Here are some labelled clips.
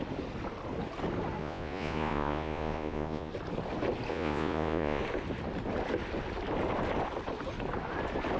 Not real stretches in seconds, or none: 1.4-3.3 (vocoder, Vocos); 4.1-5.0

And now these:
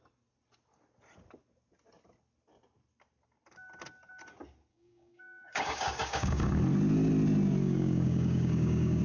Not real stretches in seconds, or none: 4.7-6.5 (codec, DAC); 7.6-9.0

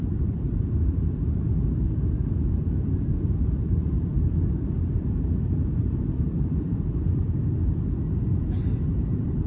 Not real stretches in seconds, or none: 0.0-7.4 (vocoder, BigVGAN v2); 8.2-9.5

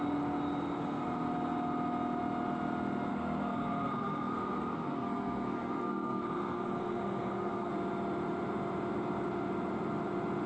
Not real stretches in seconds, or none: 3.1-7.7 (codec, SNAC)

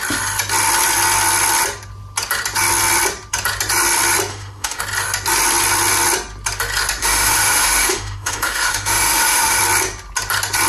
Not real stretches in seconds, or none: 4.3-4.8 (autoencoder, DAC-VAE); 7.0-9.6

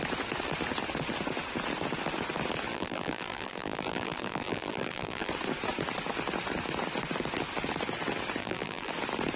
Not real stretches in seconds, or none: 2.7-5.3 (vocoder, BigVGAN v2); 8.4-8.9